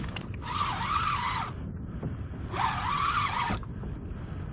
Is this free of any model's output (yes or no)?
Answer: yes